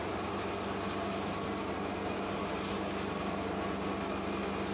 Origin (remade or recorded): recorded